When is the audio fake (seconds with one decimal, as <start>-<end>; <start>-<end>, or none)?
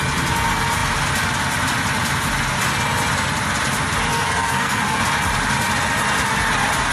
4.1-5.0